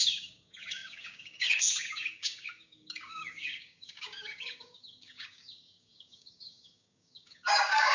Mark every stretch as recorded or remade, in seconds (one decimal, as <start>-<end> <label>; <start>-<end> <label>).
0.0-7.9 remade